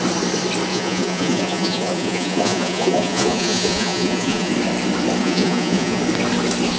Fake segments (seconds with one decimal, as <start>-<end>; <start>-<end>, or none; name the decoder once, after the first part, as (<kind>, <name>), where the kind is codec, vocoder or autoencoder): 0.7-4.5 (vocoder, Vocos); 5.2-6.0

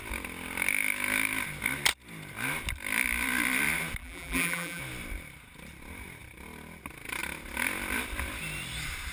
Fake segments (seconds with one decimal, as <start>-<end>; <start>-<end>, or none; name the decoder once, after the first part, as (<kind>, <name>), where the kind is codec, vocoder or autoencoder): 4.0-4.8 (vocoder, BigVGAN v2)